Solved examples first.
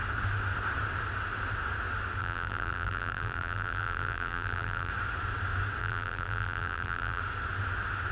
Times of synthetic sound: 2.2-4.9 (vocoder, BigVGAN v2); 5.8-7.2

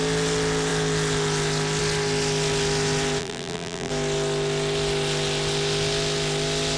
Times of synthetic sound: 3.2-3.9 (vocoder, BigVGAN v2)

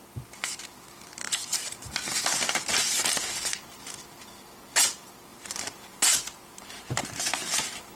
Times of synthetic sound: 0.0-1.8 (vocoder, BigVGAN v2); 5.3-7.2